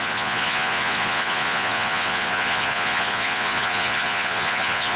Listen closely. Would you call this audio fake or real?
fake